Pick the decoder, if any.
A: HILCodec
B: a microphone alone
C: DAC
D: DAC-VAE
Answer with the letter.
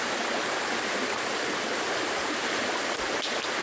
B